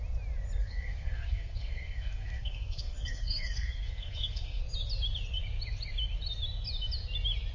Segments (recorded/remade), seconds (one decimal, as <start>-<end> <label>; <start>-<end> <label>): 0.0-0.6 recorded; 0.6-4.6 remade; 4.6-7.5 recorded